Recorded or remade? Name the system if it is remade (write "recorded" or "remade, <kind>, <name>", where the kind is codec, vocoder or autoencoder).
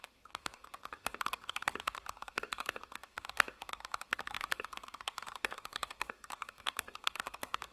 remade, codec, SNAC